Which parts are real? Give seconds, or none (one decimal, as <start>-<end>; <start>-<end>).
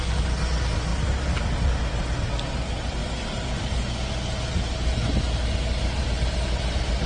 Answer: 0.0-7.1